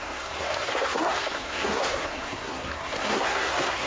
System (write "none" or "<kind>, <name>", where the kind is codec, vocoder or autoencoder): codec, SNAC